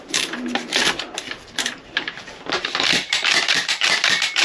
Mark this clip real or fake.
fake